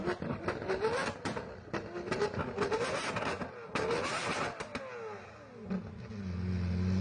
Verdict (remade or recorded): recorded